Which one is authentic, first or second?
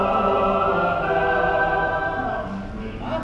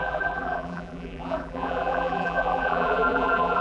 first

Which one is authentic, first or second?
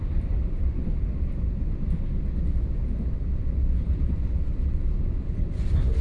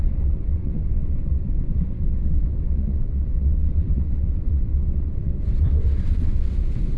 first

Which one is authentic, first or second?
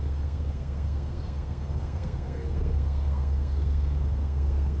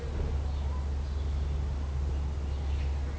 second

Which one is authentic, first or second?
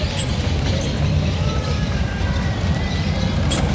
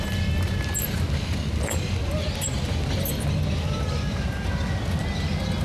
second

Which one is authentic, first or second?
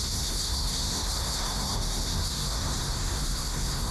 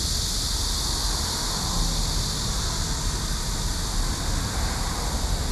second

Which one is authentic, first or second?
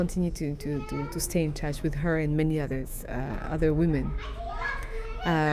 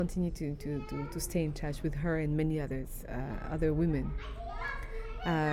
second